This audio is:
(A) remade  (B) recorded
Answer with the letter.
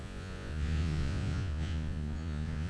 A